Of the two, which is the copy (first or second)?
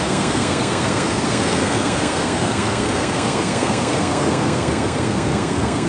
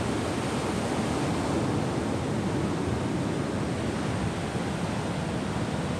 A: first